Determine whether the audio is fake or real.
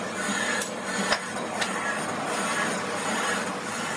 real